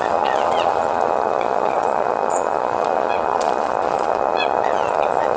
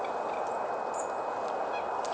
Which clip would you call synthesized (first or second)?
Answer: first